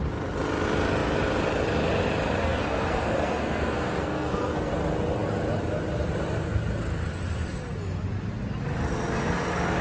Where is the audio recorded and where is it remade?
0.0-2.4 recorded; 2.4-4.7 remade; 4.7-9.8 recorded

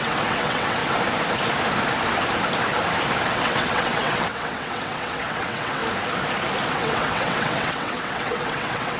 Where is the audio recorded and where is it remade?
0.0-0.8 remade; 0.8-3.3 recorded; 3.3-5.8 remade; 5.8-6.7 recorded; 6.7-9.0 remade

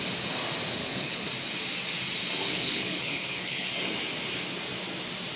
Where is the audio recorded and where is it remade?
0.0-0.8 recorded; 0.8-1.3 remade; 1.3-2.4 recorded; 2.4-3.7 remade; 3.7-5.4 recorded

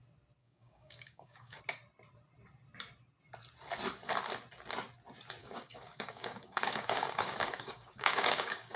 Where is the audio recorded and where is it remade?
0.0-0.4 recorded; 0.4-1.6 remade; 1.6-5.4 recorded; 5.4-8.8 remade